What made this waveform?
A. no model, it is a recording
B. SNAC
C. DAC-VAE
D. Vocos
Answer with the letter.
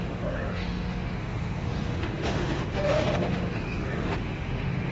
C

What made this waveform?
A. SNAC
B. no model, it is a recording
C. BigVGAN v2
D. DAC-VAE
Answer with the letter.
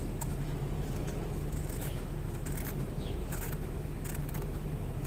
D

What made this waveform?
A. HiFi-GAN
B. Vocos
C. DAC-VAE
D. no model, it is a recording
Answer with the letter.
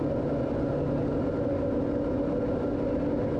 D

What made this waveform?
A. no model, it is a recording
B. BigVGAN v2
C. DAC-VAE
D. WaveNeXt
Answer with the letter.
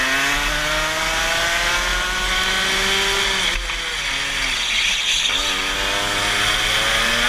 A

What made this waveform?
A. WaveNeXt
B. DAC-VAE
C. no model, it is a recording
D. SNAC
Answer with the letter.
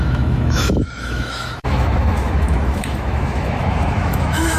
B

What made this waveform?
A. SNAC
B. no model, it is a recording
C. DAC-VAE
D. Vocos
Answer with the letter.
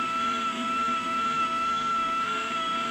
C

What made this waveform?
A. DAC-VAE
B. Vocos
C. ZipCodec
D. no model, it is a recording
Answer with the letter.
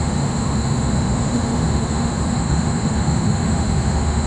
A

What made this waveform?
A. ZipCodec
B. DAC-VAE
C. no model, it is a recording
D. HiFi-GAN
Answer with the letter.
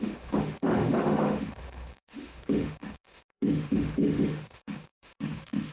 B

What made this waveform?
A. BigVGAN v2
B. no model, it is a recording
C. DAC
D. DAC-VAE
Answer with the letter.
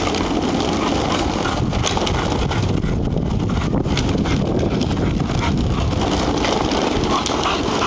B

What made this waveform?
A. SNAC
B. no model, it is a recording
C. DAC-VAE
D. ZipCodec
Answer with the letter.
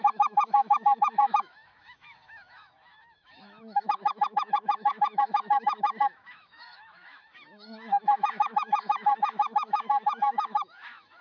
C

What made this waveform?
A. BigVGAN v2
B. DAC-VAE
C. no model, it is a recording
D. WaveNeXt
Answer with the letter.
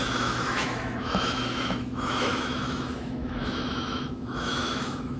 B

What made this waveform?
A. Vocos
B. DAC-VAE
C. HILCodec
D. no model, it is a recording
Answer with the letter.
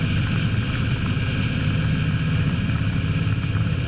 D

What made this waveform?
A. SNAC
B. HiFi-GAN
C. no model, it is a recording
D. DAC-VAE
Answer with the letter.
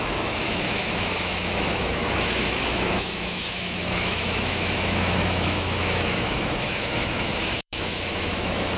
D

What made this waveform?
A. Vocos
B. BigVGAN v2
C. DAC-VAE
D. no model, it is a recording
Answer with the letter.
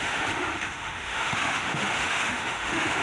C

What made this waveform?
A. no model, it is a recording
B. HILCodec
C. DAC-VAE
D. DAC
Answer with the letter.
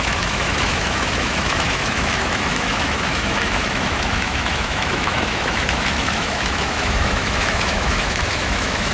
C